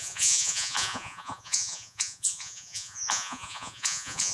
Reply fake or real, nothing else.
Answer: fake